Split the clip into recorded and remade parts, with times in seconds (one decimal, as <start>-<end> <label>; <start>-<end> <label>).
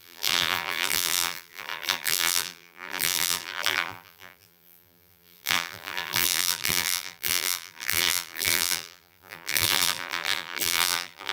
0.0-11.3 remade